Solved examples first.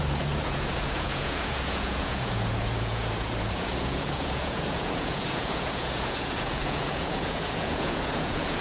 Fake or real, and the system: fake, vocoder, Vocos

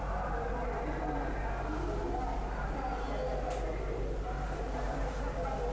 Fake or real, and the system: real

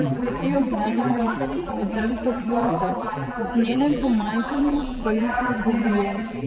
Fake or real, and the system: fake, vocoder, BigVGAN v2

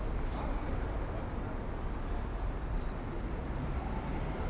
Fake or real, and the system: real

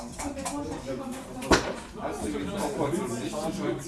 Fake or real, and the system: real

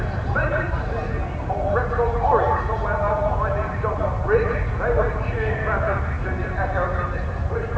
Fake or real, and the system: real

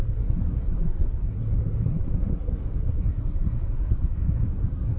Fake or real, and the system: fake, codec, SNAC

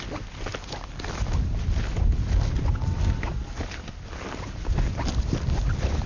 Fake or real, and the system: real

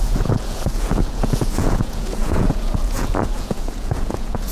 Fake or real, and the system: fake, vocoder, Vocos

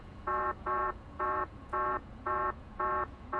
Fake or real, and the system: fake, vocoder, Vocos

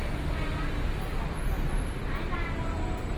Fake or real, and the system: real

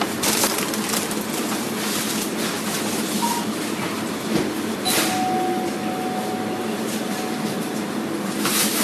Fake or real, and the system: real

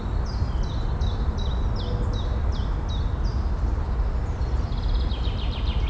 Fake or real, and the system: real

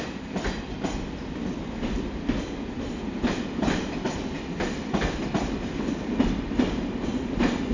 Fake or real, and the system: fake, vocoder, BigVGAN v2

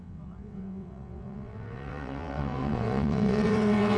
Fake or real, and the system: fake, vocoder, WaveNeXt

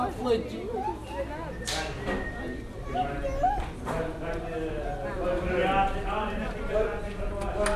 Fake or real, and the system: real